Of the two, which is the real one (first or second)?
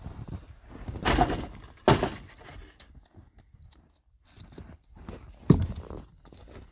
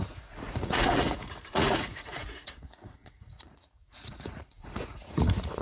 first